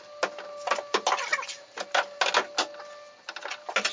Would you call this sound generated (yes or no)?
no